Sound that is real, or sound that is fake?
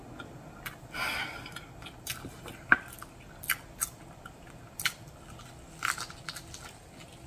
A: real